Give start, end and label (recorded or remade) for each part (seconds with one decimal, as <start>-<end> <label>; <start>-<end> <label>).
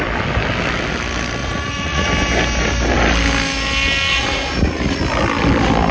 0.0-1.4 recorded; 1.4-2.1 remade; 2.1-4.1 recorded; 4.1-5.0 remade; 5.0-5.9 recorded